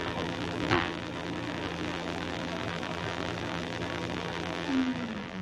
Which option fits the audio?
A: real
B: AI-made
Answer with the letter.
B